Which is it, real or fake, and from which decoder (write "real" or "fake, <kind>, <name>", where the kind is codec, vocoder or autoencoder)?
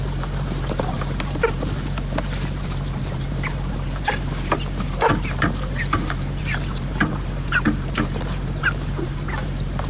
fake, vocoder, BigVGAN v2